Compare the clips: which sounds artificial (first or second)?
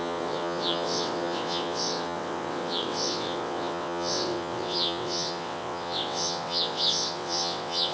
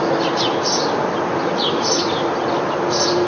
first